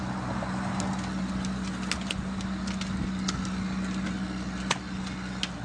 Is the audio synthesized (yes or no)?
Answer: no